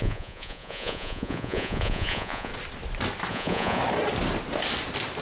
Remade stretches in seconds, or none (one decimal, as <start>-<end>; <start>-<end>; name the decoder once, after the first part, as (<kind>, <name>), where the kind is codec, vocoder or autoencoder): 0.0-2.5 (vocoder, Vocos); 3.3-3.8